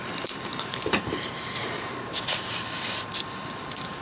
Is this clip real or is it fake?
fake